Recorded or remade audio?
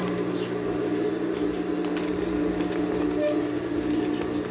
recorded